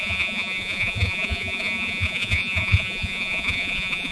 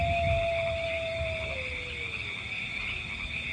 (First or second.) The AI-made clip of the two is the first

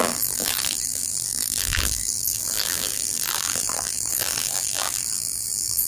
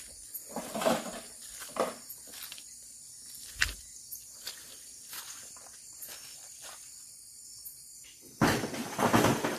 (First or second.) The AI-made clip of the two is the first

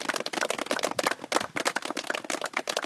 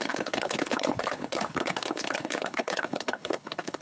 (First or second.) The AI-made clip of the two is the second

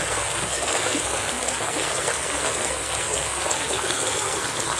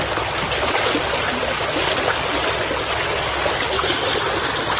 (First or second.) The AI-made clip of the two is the first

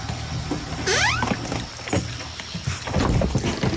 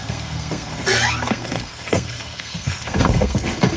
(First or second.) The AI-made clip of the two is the second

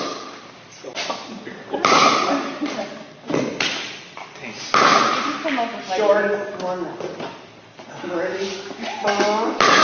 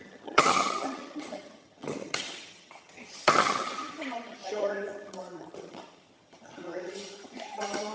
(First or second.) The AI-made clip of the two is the second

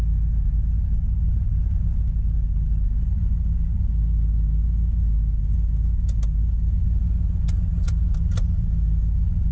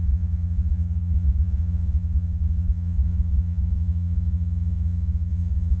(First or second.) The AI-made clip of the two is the second